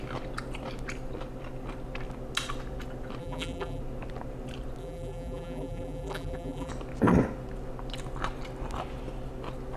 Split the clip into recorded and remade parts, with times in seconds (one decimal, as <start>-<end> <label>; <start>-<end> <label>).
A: 0.0-3.2 recorded; 3.2-3.8 remade; 3.8-4.8 recorded; 4.8-6.7 remade; 6.7-9.8 recorded